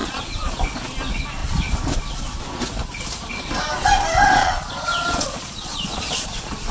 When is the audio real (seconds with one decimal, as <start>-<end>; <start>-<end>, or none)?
0.6-4.4; 6.3-6.7